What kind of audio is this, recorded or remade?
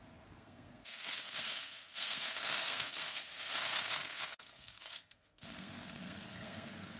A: remade